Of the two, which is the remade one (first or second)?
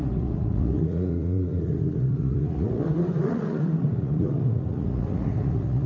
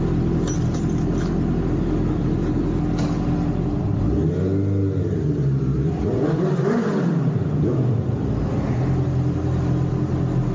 first